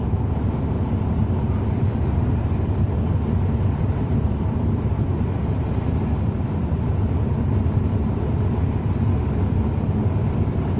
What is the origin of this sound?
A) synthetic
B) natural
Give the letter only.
B